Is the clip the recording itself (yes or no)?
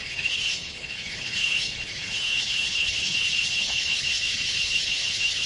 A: no